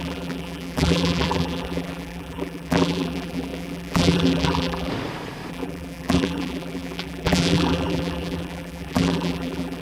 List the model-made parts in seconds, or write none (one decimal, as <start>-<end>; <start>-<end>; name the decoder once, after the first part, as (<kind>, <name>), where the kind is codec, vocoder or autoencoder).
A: 0.0-4.9 (vocoder, BigVGAN v2); 5.5-9.8